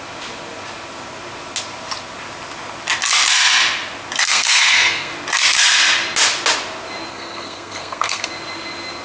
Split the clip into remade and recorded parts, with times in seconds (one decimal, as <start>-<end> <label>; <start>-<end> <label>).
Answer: 0.0-4.2 recorded; 4.2-5.1 remade; 5.1-7.1 recorded; 7.1-8.3 remade; 8.3-9.0 recorded